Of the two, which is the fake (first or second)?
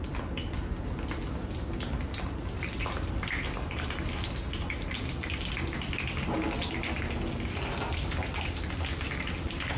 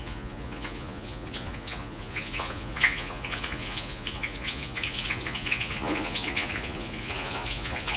second